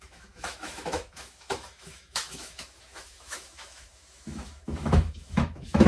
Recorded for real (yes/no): no